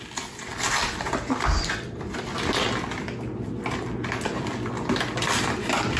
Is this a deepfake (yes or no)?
no